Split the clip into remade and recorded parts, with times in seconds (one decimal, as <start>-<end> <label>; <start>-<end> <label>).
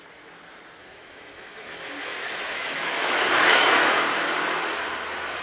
0.0-0.8 recorded; 0.8-4.0 remade; 4.0-5.4 recorded